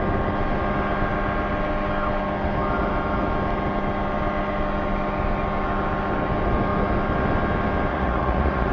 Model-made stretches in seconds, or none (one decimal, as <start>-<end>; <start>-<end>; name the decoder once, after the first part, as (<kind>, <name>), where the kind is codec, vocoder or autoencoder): 7.9-8.7 (vocoder, Vocos)